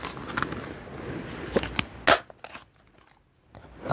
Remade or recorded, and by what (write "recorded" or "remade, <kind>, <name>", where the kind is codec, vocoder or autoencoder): recorded